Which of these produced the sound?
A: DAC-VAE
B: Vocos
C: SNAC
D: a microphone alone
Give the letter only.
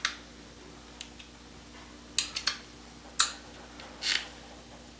D